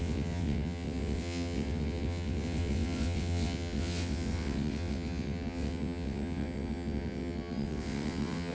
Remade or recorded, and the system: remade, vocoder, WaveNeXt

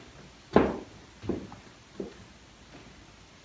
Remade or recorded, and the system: recorded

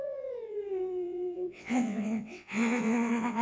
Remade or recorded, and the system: remade, vocoder, WaveNeXt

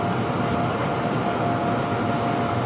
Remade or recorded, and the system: recorded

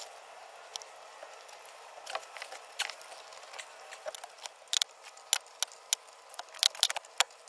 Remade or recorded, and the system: recorded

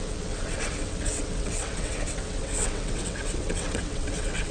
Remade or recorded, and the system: remade, vocoder, WaveNeXt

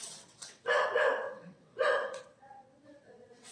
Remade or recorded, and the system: remade, vocoder, WaveNeXt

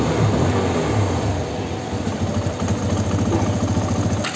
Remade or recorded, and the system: recorded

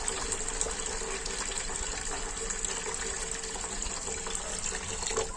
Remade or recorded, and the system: recorded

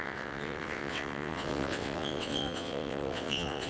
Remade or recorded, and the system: remade, vocoder, WaveNeXt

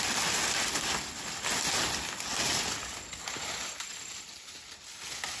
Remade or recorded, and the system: recorded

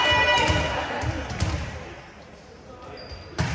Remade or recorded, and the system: recorded